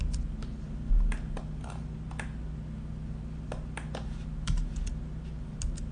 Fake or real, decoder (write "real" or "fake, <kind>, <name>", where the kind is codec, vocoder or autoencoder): real